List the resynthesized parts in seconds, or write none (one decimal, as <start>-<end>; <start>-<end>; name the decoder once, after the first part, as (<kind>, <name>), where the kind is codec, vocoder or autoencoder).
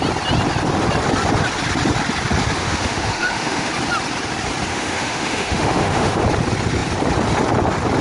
2.6-3.7 (autoencoder, DAC-VAE); 4.7-6.2